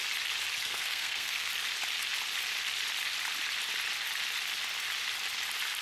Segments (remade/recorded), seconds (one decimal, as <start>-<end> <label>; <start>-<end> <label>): 0.0-0.6 recorded; 0.6-1.5 remade; 1.5-5.8 recorded